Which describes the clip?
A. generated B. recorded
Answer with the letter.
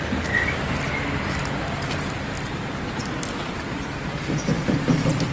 A